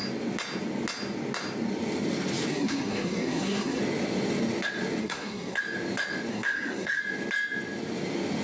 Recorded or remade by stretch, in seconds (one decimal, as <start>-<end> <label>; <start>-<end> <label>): 0.0-2.5 recorded; 2.5-3.8 remade; 3.8-5.0 recorded; 5.0-5.6 remade; 5.6-6.3 recorded; 6.3-7.0 remade; 7.0-8.4 recorded